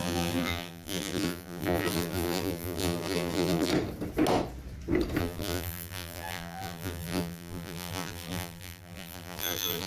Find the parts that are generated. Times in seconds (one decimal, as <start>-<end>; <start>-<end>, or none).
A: 0.0-3.7; 5.2-9.9